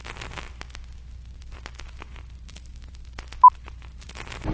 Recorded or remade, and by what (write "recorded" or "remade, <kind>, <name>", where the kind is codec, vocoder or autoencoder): recorded